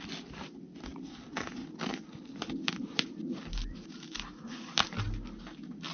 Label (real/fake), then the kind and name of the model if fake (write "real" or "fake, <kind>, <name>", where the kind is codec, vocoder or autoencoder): real